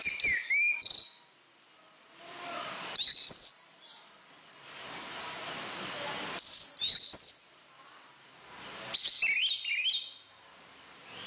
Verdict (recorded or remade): recorded